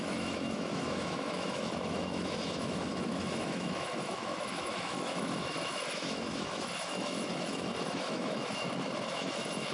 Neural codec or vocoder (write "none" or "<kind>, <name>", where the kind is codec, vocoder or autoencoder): autoencoder, DAC-VAE